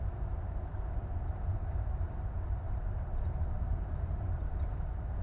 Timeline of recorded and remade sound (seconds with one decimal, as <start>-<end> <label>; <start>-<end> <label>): 0.0-1.3 recorded; 1.3-4.4 remade; 4.4-5.2 recorded